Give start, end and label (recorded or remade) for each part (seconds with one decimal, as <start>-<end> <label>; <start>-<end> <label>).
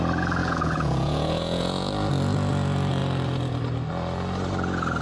0.0-0.4 recorded; 0.4-1.9 remade; 1.9-5.0 recorded